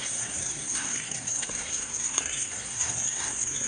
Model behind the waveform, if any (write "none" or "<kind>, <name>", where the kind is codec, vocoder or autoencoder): codec, SNAC